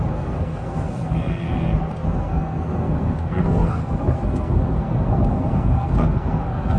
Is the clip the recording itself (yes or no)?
no